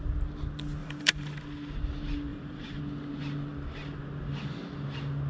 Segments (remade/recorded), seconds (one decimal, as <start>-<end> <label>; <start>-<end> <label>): 0.0-0.8 recorded; 0.8-1.3 remade; 1.3-2.3 recorded; 2.3-2.8 remade; 2.8-5.3 recorded